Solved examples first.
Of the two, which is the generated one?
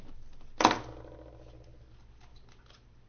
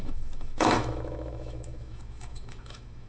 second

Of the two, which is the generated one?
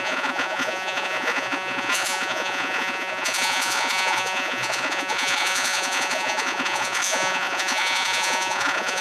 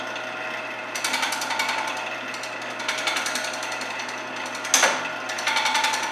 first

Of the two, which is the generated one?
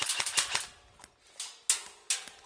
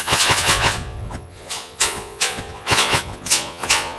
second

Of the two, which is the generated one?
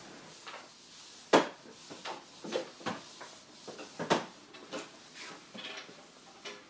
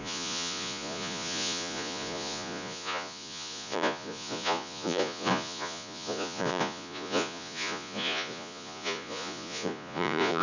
second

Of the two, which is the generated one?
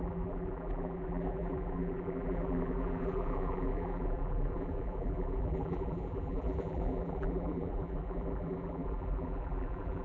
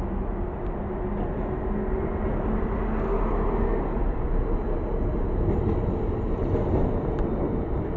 first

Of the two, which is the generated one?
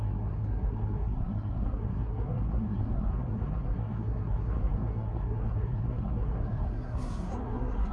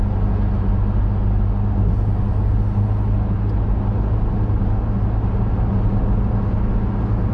first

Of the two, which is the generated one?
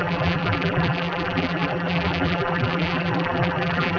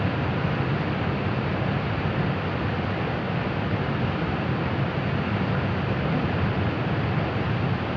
first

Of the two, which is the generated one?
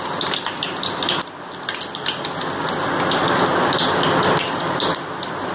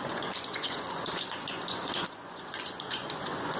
second